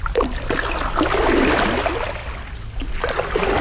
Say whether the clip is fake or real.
real